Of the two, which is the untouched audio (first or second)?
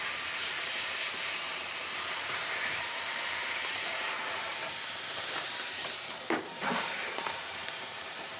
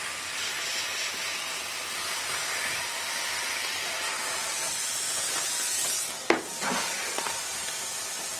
second